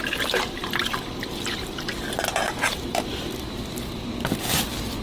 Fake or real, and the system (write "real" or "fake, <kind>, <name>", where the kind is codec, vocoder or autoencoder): fake, vocoder, BigVGAN v2